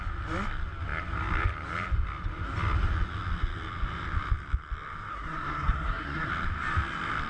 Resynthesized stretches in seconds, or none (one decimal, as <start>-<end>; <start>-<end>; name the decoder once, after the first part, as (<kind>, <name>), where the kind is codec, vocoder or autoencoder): 5.1-6.3 (codec, SNAC)